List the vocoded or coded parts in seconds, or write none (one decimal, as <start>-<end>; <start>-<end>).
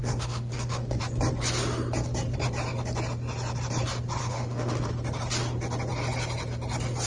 0.0-1.0; 4.2-4.9